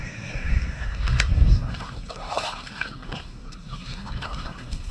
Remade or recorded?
remade